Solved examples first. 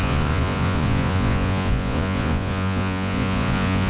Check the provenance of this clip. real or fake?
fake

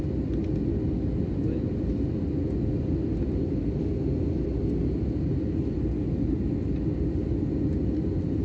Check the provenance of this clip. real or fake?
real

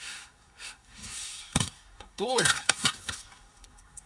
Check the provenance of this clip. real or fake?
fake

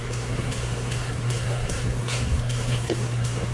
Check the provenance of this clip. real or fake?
fake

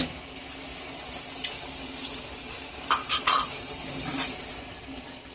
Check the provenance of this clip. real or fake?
real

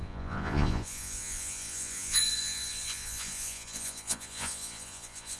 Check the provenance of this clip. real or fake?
fake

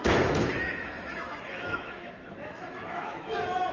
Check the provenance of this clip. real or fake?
fake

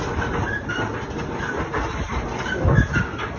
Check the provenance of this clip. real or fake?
real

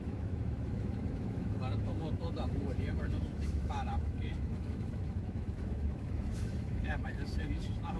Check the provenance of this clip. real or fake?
fake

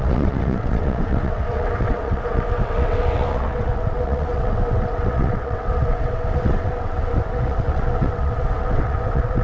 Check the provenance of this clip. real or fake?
fake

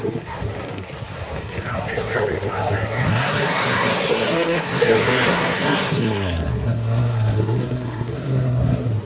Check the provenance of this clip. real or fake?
fake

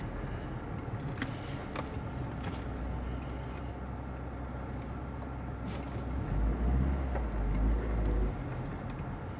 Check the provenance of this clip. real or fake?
real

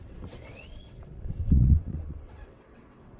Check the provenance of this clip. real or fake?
fake